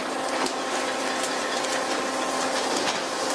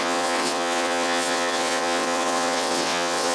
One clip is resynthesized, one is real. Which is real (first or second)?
first